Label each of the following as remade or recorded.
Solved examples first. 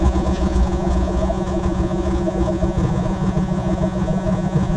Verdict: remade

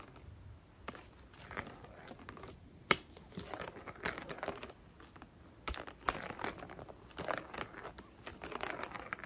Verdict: recorded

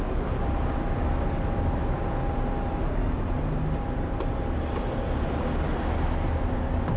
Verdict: recorded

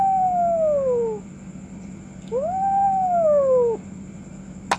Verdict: recorded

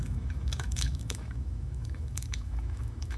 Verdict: remade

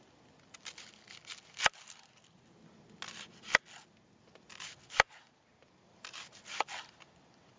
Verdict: recorded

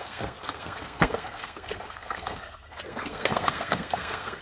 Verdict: remade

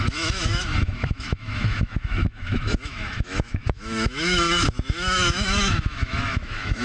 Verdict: remade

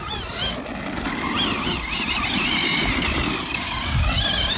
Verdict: recorded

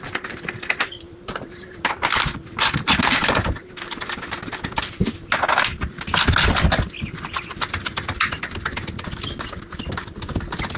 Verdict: recorded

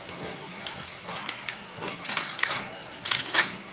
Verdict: remade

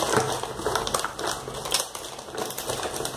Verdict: recorded